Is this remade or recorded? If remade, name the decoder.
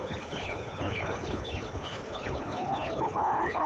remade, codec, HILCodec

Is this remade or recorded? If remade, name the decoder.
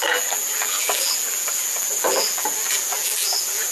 remade, vocoder, BigVGAN v2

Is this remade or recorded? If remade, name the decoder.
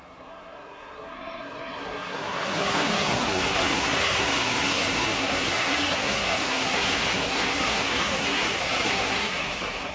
remade, codec, SNAC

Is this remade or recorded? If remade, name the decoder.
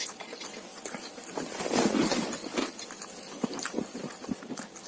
recorded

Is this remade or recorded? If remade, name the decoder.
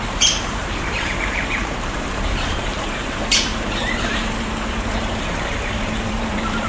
remade, vocoder, BigVGAN v2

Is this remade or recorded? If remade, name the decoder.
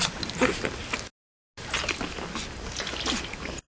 recorded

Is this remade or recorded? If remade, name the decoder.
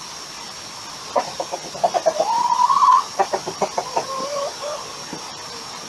recorded